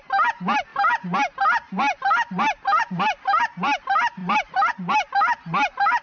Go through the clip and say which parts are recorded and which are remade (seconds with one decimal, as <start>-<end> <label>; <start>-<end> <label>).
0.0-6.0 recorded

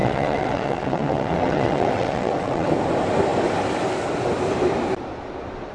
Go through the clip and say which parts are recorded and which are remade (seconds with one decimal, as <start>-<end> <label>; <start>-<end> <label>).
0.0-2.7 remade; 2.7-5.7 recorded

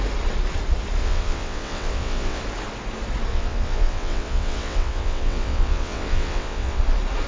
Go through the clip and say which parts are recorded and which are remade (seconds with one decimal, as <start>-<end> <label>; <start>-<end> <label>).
0.0-1.0 recorded; 1.0-2.4 remade; 2.4-3.3 recorded; 3.3-6.8 remade; 6.8-7.3 recorded

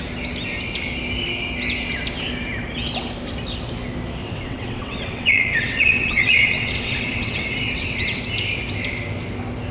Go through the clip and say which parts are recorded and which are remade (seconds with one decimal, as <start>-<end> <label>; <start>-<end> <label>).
0.0-4.2 recorded; 4.2-8.2 remade; 8.2-9.7 recorded